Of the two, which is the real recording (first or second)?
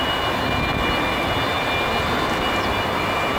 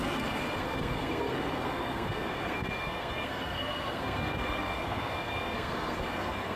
first